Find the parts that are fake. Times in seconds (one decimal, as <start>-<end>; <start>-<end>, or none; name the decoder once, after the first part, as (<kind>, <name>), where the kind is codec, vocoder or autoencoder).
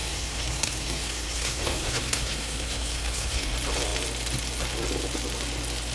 0.0-3.5 (codec, SNAC)